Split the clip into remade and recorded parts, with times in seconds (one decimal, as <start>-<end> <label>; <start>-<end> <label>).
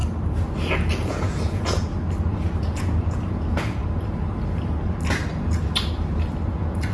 0.0-0.7 recorded; 0.7-1.9 remade; 1.9-2.6 recorded; 2.6-3.8 remade; 3.8-6.5 recorded; 6.5-6.9 remade